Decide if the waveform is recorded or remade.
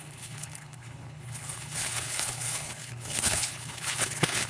remade